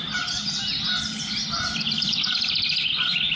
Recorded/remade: recorded